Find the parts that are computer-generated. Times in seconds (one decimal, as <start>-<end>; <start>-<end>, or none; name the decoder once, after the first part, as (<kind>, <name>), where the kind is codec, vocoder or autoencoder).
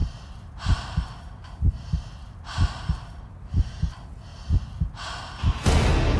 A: 0.0-3.7 (vocoder, BigVGAN v2); 4.3-5.2